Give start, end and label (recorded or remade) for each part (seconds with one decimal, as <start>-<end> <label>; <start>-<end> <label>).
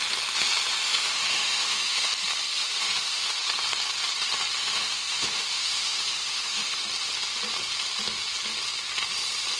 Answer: 0.0-0.8 recorded; 0.8-2.1 remade; 2.1-2.6 recorded; 2.6-3.4 remade; 3.4-4.6 recorded; 4.6-6.8 remade; 6.8-9.6 recorded